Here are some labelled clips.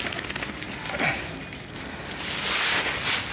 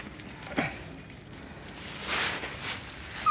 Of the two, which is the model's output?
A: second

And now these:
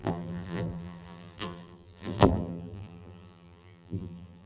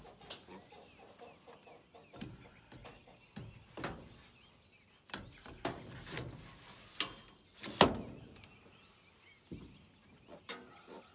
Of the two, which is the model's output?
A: first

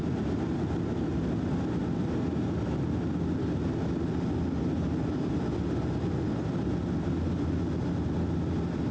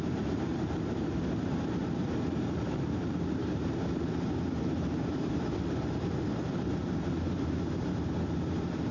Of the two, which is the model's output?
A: second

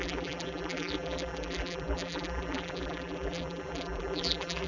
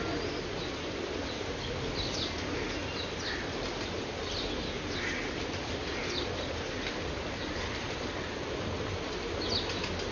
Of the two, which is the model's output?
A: first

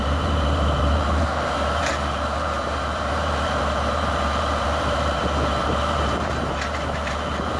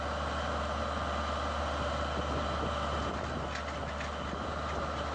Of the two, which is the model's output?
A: first